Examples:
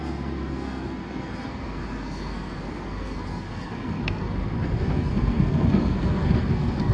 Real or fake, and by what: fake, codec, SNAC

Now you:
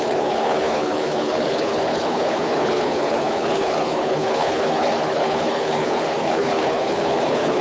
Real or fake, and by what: fake, codec, HILCodec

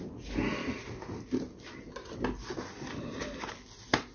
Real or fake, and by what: real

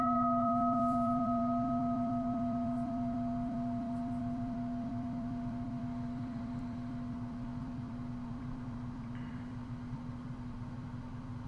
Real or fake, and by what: fake, vocoder, BigVGAN v2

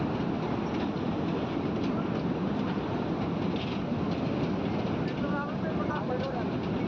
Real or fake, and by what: real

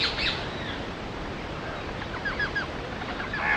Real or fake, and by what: real